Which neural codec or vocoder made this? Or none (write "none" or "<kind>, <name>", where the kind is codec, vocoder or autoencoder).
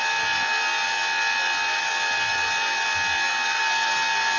none